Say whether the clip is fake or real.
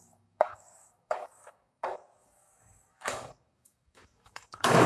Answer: fake